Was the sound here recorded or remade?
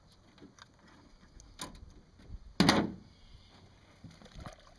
recorded